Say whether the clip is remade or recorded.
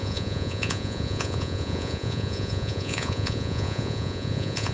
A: remade